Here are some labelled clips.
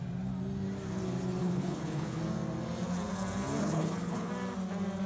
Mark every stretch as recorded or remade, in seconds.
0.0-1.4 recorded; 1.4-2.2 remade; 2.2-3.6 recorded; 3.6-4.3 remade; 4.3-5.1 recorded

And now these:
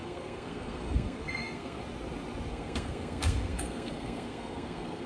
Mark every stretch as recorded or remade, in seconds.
0.0-1.8 remade; 1.8-2.5 recorded; 2.5-5.1 remade

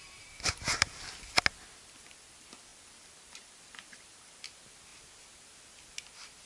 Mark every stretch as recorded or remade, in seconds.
0.0-2.7 recorded; 2.7-4.4 remade; 4.4-6.5 recorded

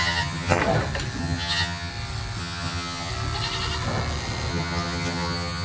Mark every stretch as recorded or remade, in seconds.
0.0-0.6 remade; 0.6-1.2 recorded; 1.2-1.9 remade; 1.9-2.4 recorded; 2.4-3.1 remade; 3.1-4.5 recorded; 4.5-5.6 remade

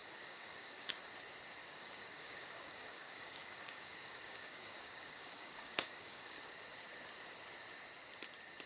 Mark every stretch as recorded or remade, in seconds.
0.0-0.9 remade; 0.9-1.6 recorded; 1.6-6.4 remade; 6.4-8.7 recorded

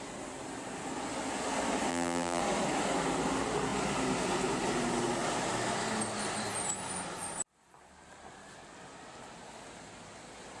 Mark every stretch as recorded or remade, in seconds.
0.0-1.9 recorded; 1.9-2.4 remade; 2.4-10.6 recorded

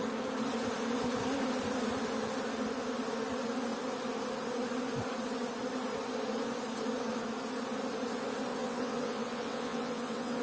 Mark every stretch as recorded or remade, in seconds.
0.0-8.5 recorded; 8.5-10.4 remade